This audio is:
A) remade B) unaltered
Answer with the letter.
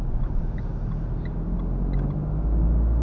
B